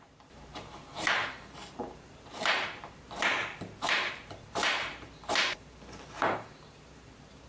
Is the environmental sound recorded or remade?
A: remade